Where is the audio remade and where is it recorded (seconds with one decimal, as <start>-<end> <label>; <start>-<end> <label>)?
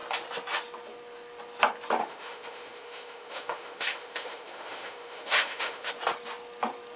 0.0-2.0 recorded; 2.0-5.9 remade; 5.9-7.0 recorded